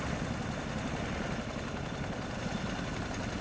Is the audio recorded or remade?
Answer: recorded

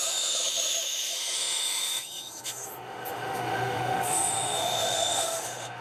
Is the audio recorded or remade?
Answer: remade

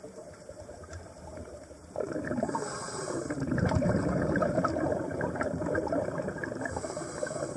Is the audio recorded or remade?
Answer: remade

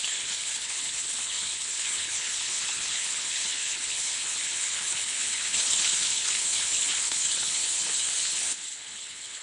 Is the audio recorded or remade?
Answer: remade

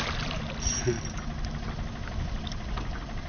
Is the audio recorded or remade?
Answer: recorded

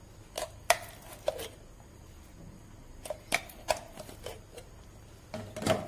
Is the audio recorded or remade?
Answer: recorded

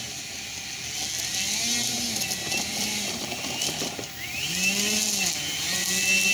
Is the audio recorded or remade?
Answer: recorded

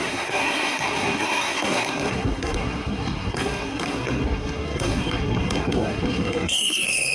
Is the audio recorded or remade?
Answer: remade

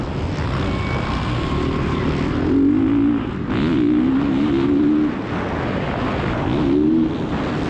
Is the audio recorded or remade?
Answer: recorded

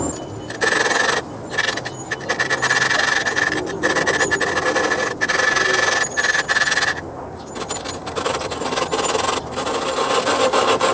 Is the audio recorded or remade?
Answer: recorded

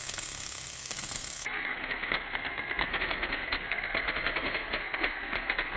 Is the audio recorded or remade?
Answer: remade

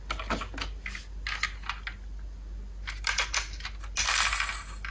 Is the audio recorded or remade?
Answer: recorded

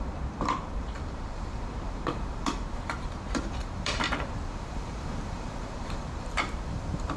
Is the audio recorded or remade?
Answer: remade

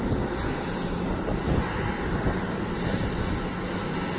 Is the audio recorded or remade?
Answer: recorded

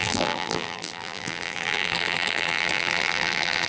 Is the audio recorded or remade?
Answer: remade